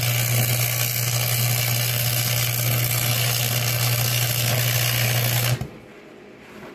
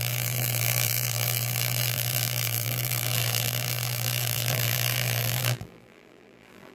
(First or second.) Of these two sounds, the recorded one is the first